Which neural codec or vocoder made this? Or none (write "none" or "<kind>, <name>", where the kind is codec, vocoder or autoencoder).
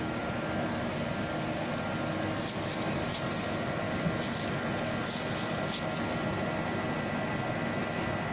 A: none